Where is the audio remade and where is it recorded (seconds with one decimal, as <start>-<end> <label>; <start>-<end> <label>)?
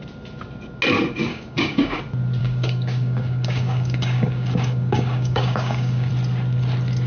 0.0-1.3 recorded; 1.3-2.0 remade; 2.0-2.4 recorded; 2.4-6.1 remade; 6.1-7.1 recorded